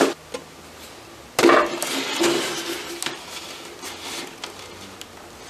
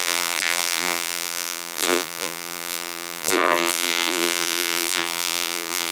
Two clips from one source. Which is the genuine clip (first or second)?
first